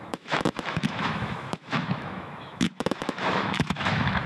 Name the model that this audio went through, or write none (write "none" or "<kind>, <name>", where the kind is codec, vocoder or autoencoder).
autoencoder, DAC-VAE